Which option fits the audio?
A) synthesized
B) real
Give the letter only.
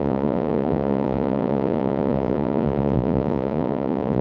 A